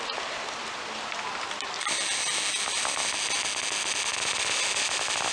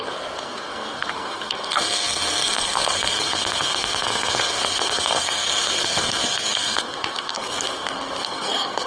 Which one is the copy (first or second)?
second